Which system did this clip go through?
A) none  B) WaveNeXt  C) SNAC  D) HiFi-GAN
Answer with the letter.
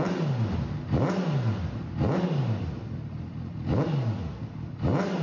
A